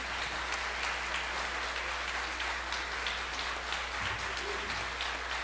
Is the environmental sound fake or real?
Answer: real